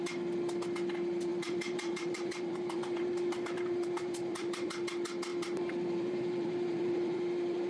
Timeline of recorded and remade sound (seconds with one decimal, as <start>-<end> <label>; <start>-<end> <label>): 0.0-1.3 recorded; 1.3-4.7 remade; 4.7-5.3 recorded; 5.3-7.7 remade

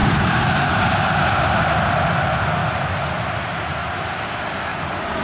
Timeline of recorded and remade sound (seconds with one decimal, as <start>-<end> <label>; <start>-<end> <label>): 0.0-1.7 remade; 1.7-2.6 recorded; 2.6-4.1 remade; 4.1-4.7 recorded; 4.7-5.2 remade

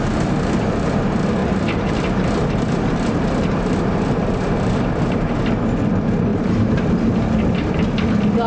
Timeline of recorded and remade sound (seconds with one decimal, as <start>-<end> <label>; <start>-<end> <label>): 0.0-1.4 recorded; 1.4-5.6 remade; 5.6-6.3 recorded; 6.3-6.9 remade; 6.9-8.5 recorded

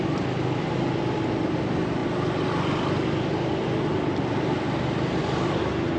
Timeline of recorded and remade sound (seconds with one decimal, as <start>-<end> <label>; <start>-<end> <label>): 0.0-6.0 recorded

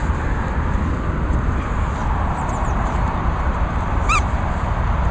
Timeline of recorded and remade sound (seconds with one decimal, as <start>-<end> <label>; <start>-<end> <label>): 0.0-2.0 recorded; 2.0-5.1 remade

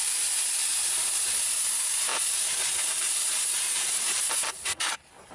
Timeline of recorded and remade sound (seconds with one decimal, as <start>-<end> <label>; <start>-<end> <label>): 0.0-5.3 remade